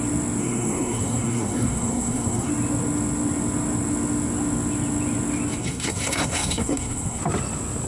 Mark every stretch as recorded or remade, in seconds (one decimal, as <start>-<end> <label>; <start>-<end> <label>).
0.0-0.4 recorded; 0.4-2.5 remade; 2.5-5.6 recorded; 5.6-7.2 remade; 7.2-7.9 recorded